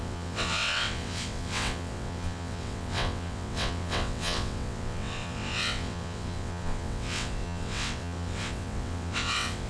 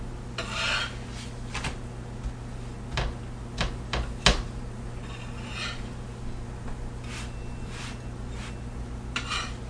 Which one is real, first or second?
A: second